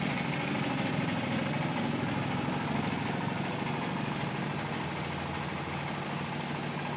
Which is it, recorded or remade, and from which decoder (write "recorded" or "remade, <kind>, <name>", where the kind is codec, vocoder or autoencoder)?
recorded